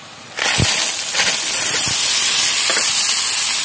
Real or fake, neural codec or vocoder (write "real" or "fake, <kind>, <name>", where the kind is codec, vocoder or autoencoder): real